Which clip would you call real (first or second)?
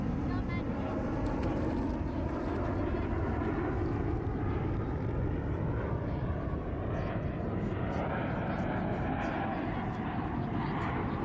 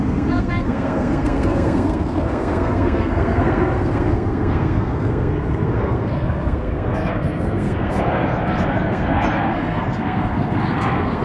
first